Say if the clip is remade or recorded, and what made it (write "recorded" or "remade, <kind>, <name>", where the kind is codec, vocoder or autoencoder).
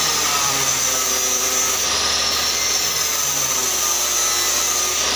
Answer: remade, vocoder, BigVGAN v2